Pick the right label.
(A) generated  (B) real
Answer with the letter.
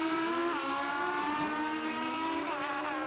A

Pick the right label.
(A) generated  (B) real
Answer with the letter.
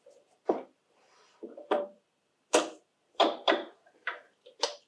A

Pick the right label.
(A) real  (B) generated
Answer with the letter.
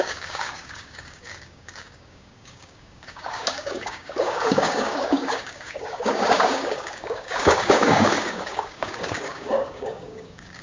B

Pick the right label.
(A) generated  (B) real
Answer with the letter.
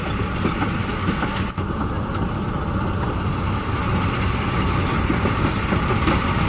B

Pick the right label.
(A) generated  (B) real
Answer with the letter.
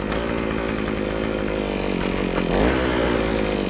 B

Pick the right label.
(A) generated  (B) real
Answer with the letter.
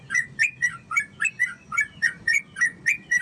A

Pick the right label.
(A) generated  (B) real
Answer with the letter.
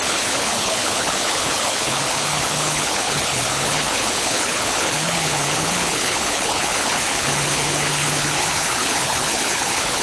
A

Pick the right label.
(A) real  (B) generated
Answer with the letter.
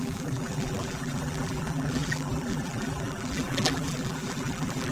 B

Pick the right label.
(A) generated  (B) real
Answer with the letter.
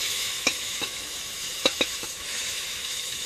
A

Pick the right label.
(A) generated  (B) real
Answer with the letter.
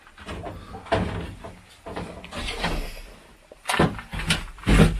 B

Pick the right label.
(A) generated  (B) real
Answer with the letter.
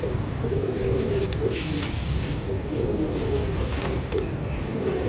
A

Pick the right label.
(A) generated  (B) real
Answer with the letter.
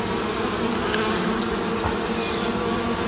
B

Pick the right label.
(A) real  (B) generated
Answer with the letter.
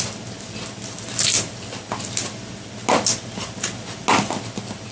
A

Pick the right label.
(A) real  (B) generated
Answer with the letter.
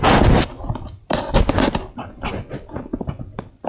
A